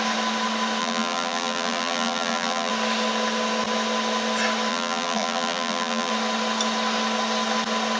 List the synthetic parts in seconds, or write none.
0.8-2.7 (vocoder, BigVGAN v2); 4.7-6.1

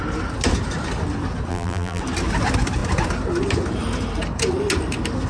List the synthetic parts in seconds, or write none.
1.5-2.0 (vocoder, BigVGAN v2)

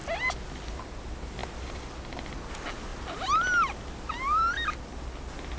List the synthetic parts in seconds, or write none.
none

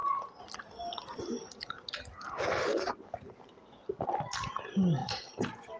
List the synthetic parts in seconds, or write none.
2.7-3.7 (vocoder, BigVGAN v2); 5.0-5.8

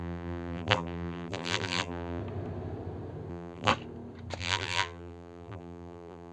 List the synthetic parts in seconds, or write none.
0.0-2.2 (vocoder, BigVGAN v2); 3.3-3.7; 4.4-6.3